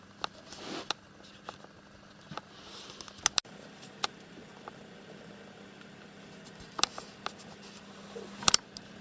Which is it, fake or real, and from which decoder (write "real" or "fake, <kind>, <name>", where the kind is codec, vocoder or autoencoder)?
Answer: real